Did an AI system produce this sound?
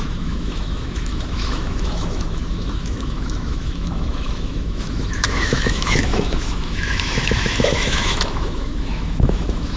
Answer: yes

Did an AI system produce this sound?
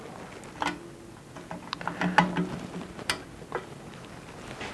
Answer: no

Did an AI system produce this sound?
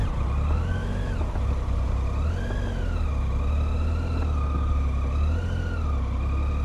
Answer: no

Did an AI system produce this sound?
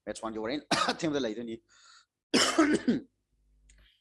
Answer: no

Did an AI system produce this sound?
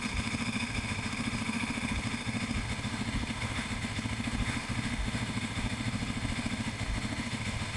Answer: yes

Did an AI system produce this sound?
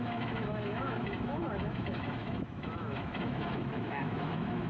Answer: yes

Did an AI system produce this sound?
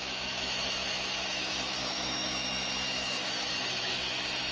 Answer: yes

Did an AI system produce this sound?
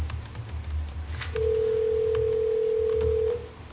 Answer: no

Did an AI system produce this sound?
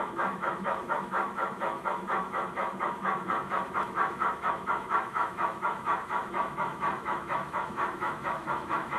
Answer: yes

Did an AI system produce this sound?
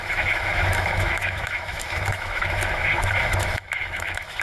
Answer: yes